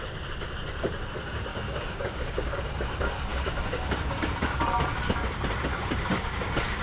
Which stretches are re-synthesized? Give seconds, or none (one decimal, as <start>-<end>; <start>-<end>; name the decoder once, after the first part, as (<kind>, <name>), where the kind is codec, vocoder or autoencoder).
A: 1.5-2.6 (codec, DAC); 3.3-4.6; 5.7-6.8